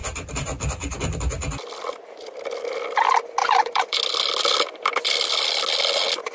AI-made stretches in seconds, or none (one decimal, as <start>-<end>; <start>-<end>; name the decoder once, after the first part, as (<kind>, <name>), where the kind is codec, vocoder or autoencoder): 3.4-4.0 (vocoder, BigVGAN v2)